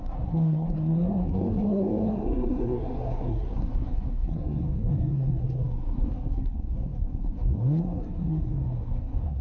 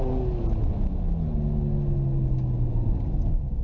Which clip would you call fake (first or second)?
first